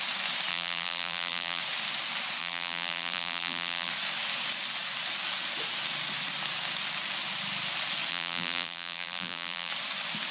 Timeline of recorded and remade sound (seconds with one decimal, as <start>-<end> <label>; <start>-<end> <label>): 0.0-0.5 recorded; 0.5-1.6 remade; 1.6-2.4 recorded; 2.4-3.9 remade; 3.9-8.1 recorded; 8.1-9.7 remade; 9.7-10.3 recorded